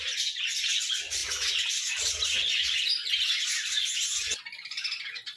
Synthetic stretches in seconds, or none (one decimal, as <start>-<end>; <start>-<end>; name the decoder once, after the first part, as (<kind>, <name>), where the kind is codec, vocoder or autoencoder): none